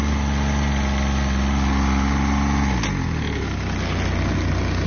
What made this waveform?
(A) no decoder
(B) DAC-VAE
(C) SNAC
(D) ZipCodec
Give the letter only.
A